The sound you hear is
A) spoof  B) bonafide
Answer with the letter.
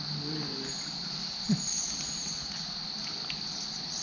B